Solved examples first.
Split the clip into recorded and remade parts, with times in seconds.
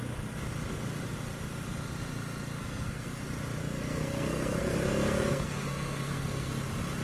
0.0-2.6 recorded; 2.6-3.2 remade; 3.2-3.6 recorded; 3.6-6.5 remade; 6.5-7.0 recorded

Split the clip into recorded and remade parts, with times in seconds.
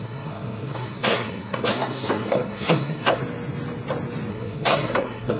0.0-3.2 remade; 3.2-4.3 recorded; 4.3-5.4 remade